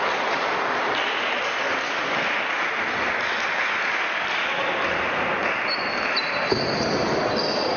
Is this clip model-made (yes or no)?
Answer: no